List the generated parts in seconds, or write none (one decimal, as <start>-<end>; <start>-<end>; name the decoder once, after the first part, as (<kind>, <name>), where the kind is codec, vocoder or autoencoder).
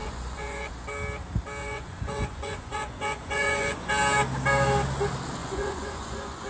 0.0-0.7 (vocoder, Vocos); 1.6-3.9; 5.4-6.5